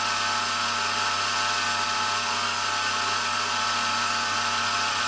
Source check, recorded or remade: recorded